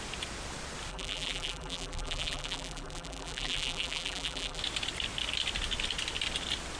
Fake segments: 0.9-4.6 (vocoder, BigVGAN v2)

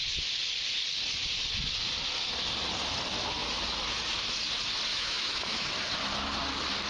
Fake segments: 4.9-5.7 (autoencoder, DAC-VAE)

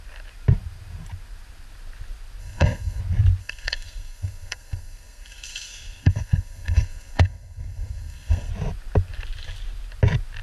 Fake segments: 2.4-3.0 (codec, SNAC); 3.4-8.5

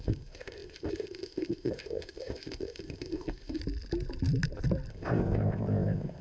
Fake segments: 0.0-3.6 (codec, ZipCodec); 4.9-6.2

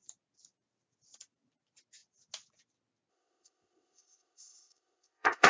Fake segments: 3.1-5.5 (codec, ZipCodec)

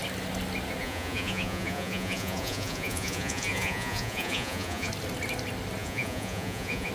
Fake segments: 0.8-4.9 (vocoder, Vocos); 5.8-6.9